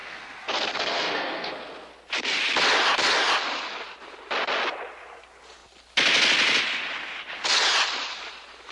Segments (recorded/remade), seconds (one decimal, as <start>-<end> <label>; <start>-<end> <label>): 0.0-1.9 remade; 1.9-8.7 recorded